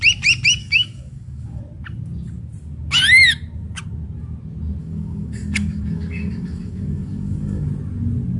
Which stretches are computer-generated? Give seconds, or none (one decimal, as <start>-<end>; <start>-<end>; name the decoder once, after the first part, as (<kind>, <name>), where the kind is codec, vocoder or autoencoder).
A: 0.6-1.6 (codec, DAC); 4.8-7.7